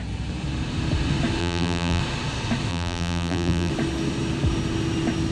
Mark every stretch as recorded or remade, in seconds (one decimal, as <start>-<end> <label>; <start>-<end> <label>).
0.0-1.4 recorded; 1.4-2.0 remade; 2.0-2.7 recorded; 2.7-3.7 remade; 3.7-5.3 recorded